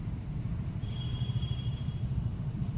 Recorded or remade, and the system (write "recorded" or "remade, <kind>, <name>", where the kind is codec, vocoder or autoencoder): remade, vocoder, BigVGAN v2